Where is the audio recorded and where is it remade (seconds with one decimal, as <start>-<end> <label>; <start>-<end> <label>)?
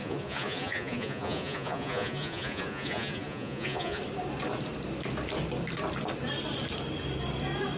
0.0-4.0 remade; 4.0-7.8 recorded